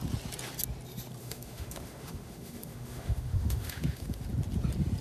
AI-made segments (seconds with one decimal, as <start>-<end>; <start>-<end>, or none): 1.2-4.2